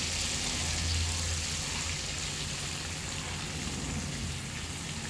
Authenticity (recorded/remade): recorded